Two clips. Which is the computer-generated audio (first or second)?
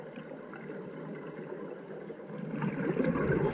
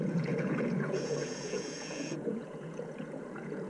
second